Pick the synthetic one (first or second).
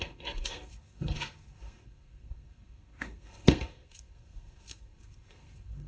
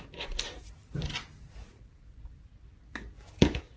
first